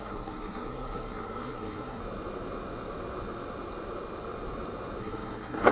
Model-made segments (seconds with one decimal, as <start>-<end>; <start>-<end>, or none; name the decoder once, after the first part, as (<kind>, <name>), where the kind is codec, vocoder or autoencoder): 0.0-2.0 (codec, SNAC); 5.0-5.7

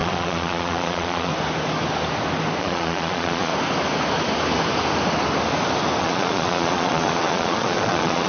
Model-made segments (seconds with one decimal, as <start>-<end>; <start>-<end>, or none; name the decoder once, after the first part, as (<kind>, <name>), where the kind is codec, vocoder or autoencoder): 0.0-1.3 (vocoder, Vocos); 2.6-3.5; 6.0-8.3

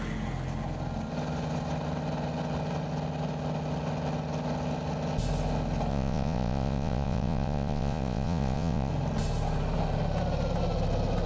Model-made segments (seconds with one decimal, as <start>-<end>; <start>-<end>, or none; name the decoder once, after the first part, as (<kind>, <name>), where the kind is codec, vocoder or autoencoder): 5.9-8.9 (vocoder, Vocos)

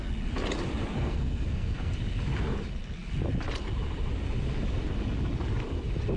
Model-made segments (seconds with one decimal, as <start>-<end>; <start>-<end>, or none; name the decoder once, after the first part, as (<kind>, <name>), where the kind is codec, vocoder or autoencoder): 1.0-1.9 (codec, SNAC)